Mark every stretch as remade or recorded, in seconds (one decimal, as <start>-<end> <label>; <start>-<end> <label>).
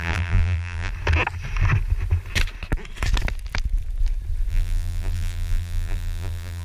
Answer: 0.0-0.9 remade; 0.9-4.5 recorded; 4.5-6.6 remade